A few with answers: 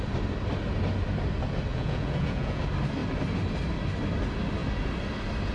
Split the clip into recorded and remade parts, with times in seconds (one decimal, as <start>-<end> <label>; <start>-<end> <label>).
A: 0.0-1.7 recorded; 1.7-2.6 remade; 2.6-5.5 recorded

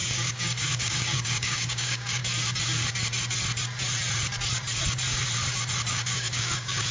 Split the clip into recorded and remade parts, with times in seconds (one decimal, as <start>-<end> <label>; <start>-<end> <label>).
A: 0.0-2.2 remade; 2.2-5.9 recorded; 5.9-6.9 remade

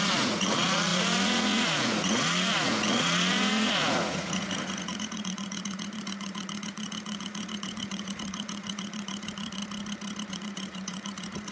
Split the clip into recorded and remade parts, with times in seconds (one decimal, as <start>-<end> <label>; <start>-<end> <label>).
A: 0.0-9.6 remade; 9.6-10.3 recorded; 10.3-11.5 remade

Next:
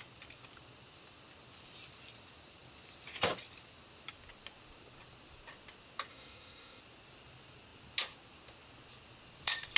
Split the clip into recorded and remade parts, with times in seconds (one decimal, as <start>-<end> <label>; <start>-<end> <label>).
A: 0.0-6.1 recorded; 6.1-6.8 remade; 6.8-9.8 recorded

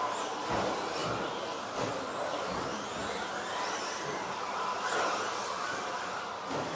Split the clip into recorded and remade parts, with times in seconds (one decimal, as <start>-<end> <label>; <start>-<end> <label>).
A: 0.0-6.8 recorded